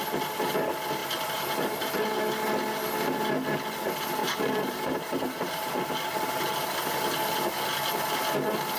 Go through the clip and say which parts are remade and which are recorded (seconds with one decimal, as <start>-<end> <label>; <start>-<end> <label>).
0.0-1.0 recorded; 1.0-2.2 remade; 2.2-4.2 recorded; 4.2-5.7 remade; 5.7-8.8 recorded